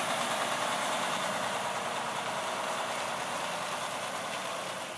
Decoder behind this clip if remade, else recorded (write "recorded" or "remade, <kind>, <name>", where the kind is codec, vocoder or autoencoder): recorded